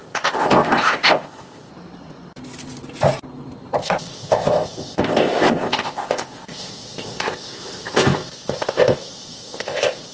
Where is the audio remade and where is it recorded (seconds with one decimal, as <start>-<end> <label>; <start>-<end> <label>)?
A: 0.0-1.7 remade; 1.7-3.8 recorded; 3.8-10.1 remade